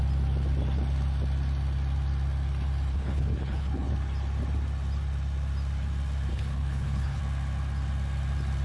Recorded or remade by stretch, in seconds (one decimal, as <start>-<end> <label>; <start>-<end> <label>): 0.0-2.9 recorded; 2.9-3.9 remade; 3.9-6.3 recorded; 6.3-7.2 remade; 7.2-8.6 recorded